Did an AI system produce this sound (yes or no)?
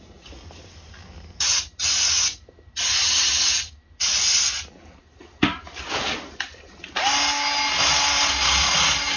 no